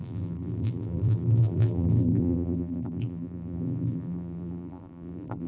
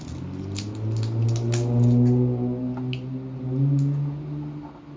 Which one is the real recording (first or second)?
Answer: second